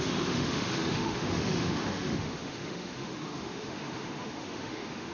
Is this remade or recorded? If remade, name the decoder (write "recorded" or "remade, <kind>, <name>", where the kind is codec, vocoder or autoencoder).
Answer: remade, autoencoder, DAC-VAE